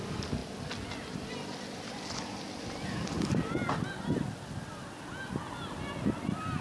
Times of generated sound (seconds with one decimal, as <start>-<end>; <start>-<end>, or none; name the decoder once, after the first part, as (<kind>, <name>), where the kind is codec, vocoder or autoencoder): none